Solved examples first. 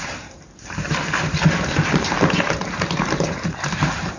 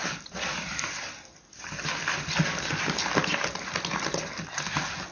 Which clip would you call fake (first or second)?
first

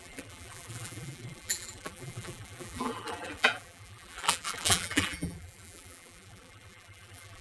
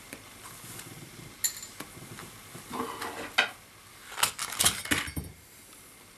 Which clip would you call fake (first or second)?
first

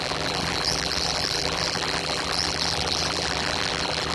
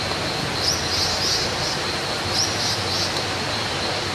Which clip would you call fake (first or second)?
first